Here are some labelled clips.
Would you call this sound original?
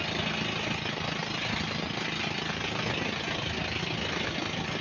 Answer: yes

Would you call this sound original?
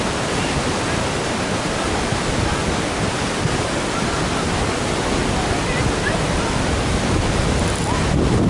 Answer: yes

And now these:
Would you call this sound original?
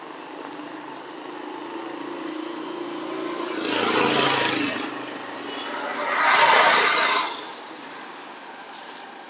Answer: yes